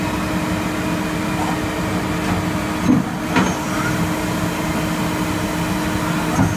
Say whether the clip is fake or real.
real